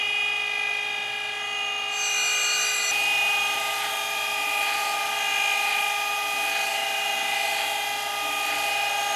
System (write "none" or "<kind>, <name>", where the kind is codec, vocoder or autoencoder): none